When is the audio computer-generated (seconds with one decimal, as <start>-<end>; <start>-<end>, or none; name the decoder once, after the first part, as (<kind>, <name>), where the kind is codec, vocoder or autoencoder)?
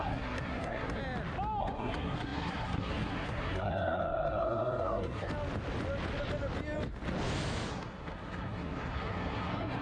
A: 0.0-1.0 (codec, SNAC); 1.6-5.3; 7.7-9.8